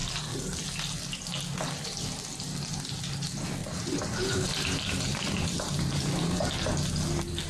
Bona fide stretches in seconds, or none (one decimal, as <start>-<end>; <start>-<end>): 0.0-3.6; 6.4-7.5